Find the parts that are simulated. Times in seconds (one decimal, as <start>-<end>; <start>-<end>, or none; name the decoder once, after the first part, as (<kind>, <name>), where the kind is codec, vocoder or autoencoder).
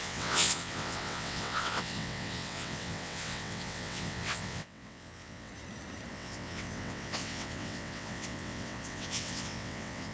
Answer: 0.0-5.5 (vocoder, WaveNeXt); 6.1-10.1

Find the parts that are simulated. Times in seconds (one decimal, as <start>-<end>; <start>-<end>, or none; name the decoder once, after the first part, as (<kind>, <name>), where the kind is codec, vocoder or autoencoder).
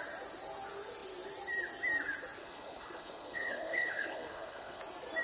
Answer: 2.4-4.8 (codec, HILCodec)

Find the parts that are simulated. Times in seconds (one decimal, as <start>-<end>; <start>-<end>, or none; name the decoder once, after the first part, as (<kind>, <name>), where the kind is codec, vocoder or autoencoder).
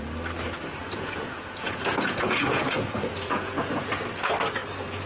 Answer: 0.8-3.9 (vocoder, Vocos)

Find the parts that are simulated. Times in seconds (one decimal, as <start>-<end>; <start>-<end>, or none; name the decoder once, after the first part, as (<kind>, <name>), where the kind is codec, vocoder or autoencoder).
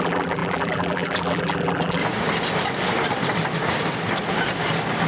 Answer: 0.0-2.0 (vocoder, BigVGAN v2)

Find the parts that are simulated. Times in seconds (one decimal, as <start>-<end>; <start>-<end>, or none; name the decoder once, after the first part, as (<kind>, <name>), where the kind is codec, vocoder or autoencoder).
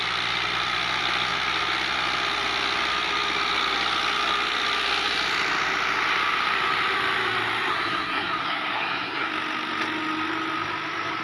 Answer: 7.7-9.3 (codec, SNAC)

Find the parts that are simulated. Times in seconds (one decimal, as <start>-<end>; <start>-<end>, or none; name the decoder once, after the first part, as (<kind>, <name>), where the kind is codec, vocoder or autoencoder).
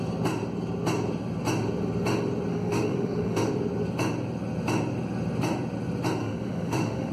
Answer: 2.5-3.5 (autoencoder, DAC-VAE); 6.2-7.1